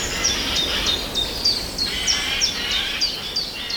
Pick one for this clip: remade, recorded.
recorded